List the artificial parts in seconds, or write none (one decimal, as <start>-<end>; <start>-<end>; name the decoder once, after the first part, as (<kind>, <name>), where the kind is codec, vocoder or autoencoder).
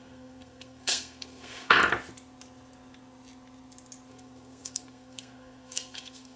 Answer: 0.0-1.8 (codec, SNAC); 4.1-6.4